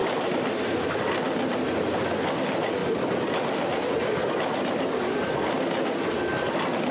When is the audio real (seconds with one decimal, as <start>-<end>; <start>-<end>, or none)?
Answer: 0.9-6.9